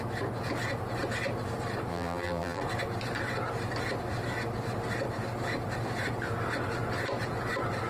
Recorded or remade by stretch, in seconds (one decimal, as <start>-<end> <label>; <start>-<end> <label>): 0.0-1.9 recorded; 1.9-2.6 remade; 2.6-7.9 recorded